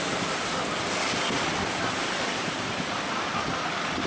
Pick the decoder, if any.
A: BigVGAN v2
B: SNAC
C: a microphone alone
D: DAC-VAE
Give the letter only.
C